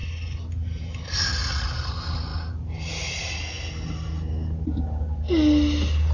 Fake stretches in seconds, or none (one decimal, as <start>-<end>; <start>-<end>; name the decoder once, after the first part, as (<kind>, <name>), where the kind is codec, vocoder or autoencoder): none